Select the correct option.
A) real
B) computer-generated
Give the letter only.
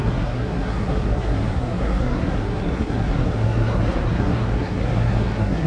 B